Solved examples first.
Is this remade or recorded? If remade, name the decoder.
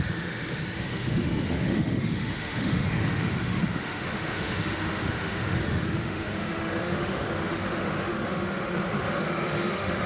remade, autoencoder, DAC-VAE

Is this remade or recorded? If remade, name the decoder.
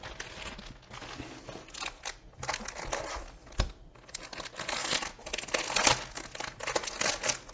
recorded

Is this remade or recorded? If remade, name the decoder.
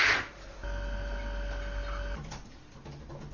recorded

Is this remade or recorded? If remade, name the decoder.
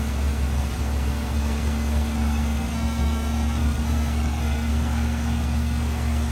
remade, codec, SNAC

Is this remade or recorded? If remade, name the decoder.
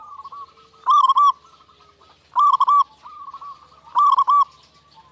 recorded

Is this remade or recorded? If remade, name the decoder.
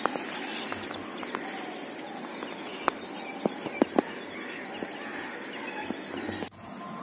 recorded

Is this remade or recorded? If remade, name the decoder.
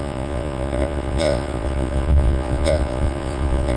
remade, vocoder, Vocos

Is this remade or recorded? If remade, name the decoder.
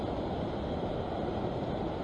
recorded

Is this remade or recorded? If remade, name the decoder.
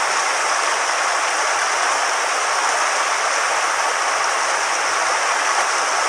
recorded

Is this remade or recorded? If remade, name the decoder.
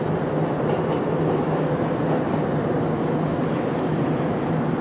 recorded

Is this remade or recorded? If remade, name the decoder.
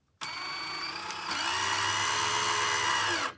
recorded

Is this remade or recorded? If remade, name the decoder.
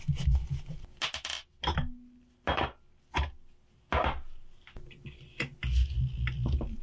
recorded